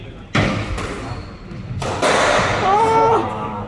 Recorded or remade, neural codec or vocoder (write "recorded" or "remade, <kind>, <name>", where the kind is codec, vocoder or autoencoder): recorded